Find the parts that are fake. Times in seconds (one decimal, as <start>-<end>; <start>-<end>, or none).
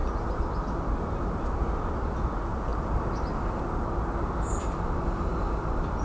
2.7-5.4